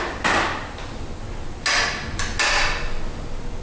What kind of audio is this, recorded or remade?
recorded